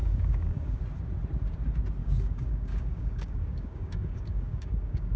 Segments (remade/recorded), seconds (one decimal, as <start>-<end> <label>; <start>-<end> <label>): 0.0-0.8 remade; 0.8-2.0 recorded; 2.0-5.2 remade